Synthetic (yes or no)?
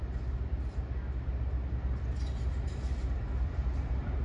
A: no